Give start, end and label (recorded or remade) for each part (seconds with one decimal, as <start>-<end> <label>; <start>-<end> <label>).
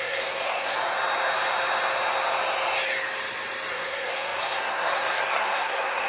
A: 0.0-0.8 remade; 0.8-3.7 recorded; 3.7-6.1 remade